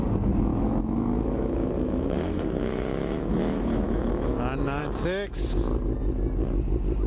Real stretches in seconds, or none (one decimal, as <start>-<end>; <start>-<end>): 0.0-0.5; 4.8-7.1